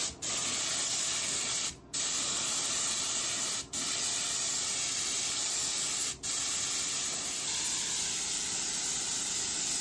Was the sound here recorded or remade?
recorded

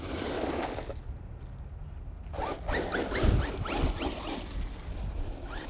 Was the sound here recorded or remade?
recorded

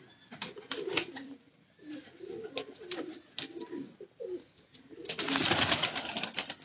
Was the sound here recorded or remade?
recorded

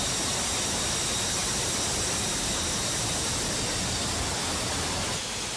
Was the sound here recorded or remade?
recorded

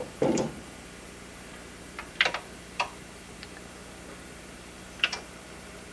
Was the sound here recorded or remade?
remade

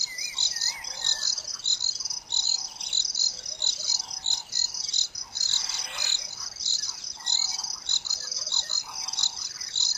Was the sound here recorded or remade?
recorded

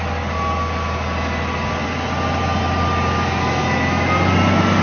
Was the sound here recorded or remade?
recorded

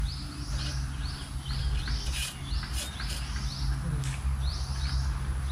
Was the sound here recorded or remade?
recorded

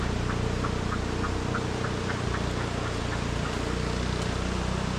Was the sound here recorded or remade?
recorded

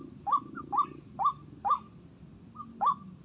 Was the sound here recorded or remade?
recorded